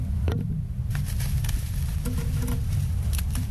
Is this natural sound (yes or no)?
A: yes